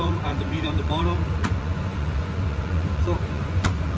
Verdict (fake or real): fake